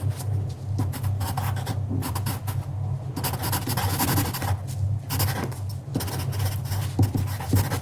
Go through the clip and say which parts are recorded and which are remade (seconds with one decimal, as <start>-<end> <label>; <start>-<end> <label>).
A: 0.0-7.8 recorded